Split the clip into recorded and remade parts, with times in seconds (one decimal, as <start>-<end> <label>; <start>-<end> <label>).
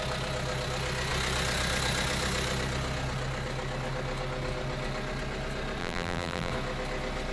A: 0.0-5.8 recorded; 5.8-6.5 remade; 6.5-7.3 recorded